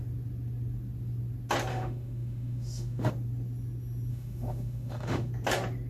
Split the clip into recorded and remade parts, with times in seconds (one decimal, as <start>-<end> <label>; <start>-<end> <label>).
0.0-1.7 recorded; 1.7-3.1 remade; 3.1-4.1 recorded; 4.1-5.3 remade; 5.3-5.9 recorded